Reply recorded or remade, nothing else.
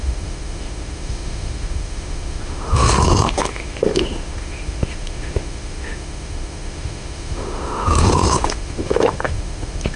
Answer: remade